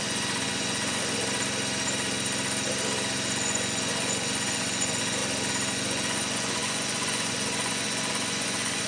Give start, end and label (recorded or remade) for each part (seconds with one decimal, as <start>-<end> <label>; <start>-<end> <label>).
0.0-1.2 remade; 1.2-3.3 recorded; 3.3-5.2 remade; 5.2-5.7 recorded; 5.7-8.9 remade